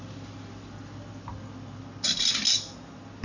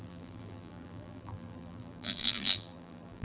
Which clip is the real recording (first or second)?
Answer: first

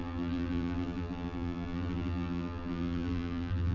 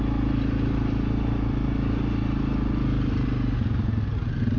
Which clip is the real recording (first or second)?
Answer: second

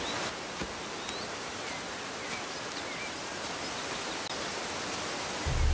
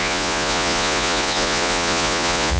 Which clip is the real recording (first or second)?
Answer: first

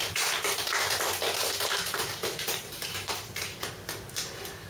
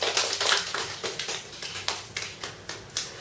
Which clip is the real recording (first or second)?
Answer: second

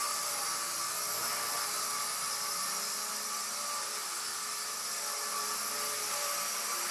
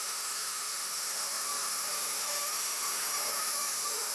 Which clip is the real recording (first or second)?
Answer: first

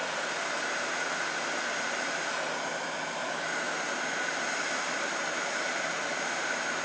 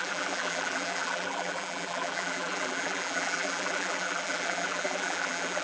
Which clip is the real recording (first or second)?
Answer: first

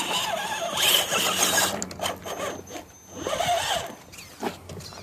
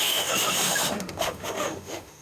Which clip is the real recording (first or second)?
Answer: first